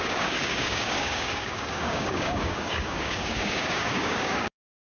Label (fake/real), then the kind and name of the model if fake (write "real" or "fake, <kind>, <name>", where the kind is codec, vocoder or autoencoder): fake, codec, DAC